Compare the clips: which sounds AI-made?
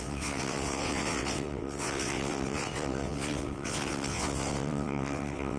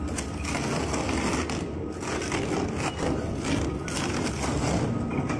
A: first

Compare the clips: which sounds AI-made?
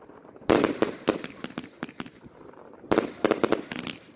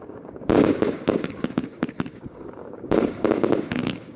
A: second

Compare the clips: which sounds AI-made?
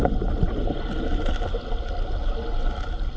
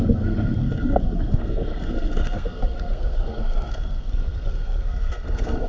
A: second